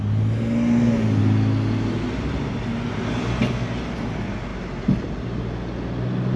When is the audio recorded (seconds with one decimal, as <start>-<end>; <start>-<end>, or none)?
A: 0.0-6.4